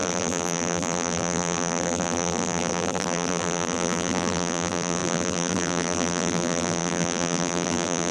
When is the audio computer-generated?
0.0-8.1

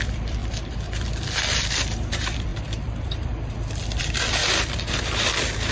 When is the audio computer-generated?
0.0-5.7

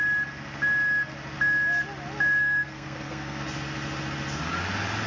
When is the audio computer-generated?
2.4-3.4

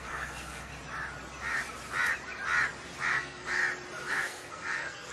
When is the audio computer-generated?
0.0-0.7; 3.1-3.6; 4.1-5.1

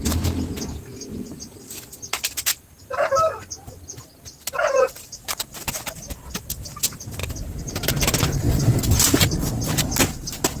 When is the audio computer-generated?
1.1-2.1; 7.2-8.4

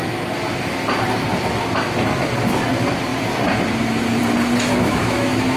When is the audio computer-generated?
4.7-5.6

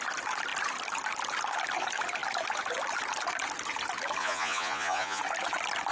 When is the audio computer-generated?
4.2-5.2